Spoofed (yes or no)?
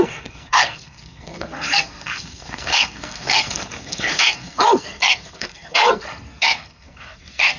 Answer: yes